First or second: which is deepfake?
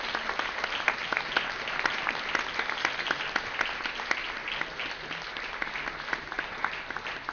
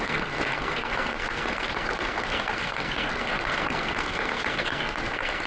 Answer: second